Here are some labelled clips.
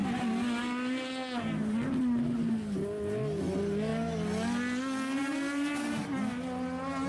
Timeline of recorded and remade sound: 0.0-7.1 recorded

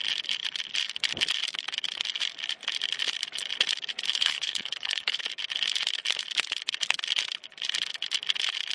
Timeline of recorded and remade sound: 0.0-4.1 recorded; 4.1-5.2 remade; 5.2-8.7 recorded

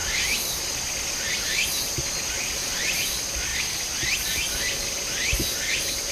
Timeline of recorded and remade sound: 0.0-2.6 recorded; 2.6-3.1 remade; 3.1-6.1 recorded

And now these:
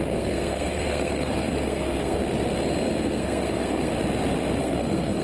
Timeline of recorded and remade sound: 0.0-2.2 remade; 2.2-3.0 recorded; 3.0-3.9 remade; 3.9-4.6 recorded; 4.6-5.2 remade